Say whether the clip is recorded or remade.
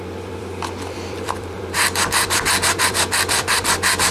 remade